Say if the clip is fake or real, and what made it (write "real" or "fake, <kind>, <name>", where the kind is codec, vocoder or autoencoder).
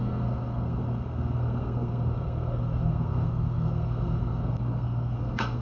fake, codec, SNAC